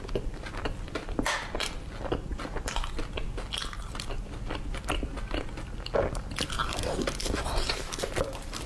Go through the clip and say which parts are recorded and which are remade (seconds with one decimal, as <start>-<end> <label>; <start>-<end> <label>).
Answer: 0.0-6.6 recorded; 6.6-8.7 remade